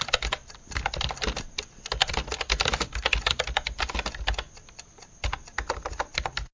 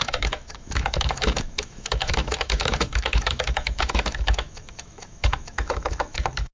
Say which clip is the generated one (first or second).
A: second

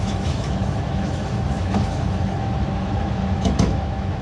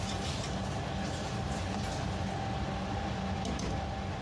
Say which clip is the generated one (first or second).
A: first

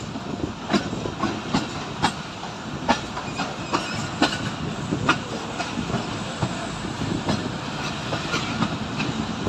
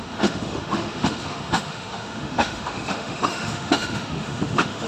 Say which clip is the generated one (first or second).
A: second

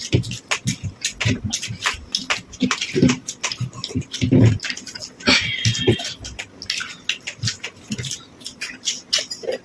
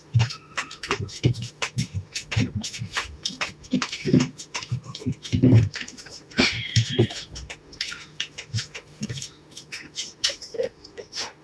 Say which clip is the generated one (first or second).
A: second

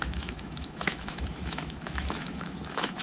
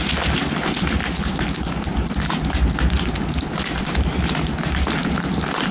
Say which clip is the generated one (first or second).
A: first